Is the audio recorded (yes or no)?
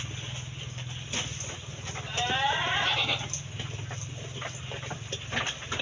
yes